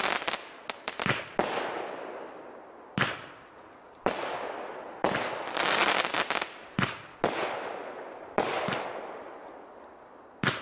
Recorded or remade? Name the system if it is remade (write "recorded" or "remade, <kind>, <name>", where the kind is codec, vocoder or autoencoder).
recorded